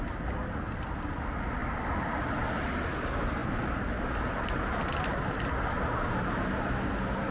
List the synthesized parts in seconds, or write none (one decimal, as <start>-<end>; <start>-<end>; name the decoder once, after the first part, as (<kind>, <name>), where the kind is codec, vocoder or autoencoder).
none